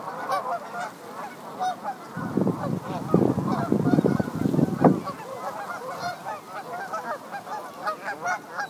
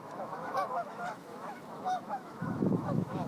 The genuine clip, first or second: first